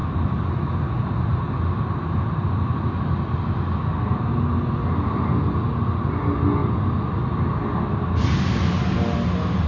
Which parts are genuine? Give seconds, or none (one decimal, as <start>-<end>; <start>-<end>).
0.0-9.7

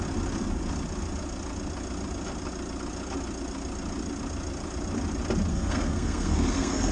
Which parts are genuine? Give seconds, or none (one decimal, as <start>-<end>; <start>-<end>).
0.0-5.5

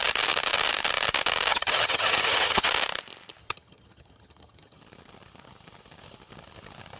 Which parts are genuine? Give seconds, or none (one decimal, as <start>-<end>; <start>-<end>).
0.0-1.5; 2.7-3.4; 4.8-7.0